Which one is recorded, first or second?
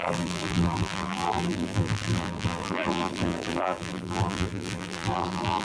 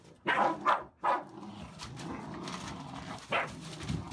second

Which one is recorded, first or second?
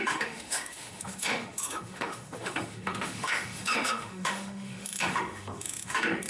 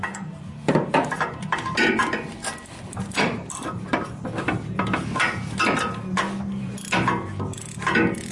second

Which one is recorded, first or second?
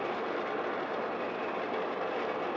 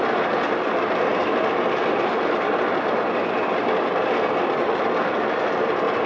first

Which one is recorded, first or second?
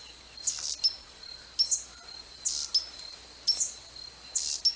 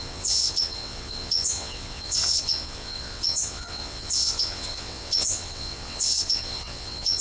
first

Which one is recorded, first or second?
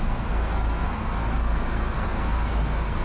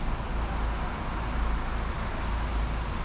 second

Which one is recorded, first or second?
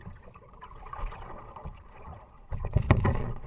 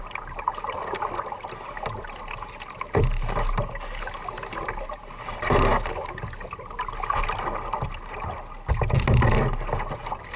second